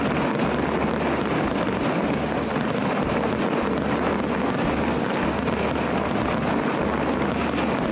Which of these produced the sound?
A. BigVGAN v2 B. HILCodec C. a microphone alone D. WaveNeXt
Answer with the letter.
C